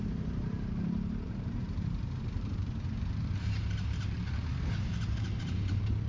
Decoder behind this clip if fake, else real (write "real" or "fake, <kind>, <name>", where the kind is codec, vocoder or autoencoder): fake, vocoder, BigVGAN v2